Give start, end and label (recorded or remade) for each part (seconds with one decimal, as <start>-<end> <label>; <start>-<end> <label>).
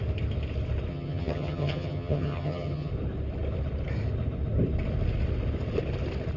0.0-0.9 recorded; 0.9-2.9 remade; 2.9-6.4 recorded